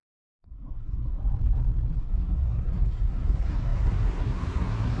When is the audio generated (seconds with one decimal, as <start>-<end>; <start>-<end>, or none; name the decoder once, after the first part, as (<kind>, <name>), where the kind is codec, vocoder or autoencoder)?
0.0-1.2 (codec, SNAC); 2.0-5.0